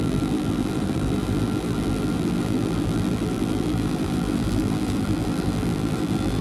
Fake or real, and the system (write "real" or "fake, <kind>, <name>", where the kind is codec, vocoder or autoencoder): fake, vocoder, BigVGAN v2